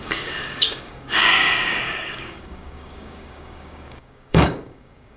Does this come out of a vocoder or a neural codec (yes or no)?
yes